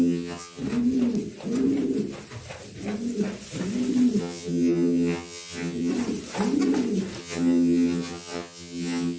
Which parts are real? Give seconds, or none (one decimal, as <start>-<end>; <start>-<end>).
0.6-4.2; 5.9-7.2